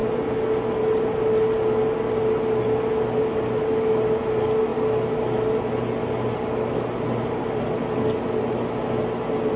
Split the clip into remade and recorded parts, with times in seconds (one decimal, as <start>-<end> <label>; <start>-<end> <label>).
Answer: 0.0-9.6 recorded